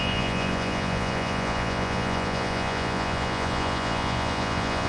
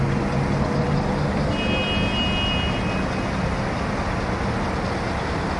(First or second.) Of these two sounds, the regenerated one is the first